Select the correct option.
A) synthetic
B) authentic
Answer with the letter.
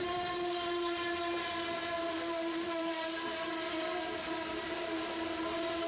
B